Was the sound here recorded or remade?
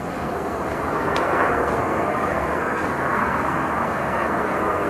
remade